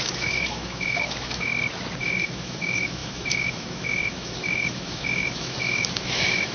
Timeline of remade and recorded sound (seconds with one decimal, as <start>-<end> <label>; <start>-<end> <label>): 0.0-1.5 remade; 1.5-2.0 recorded; 2.0-6.5 remade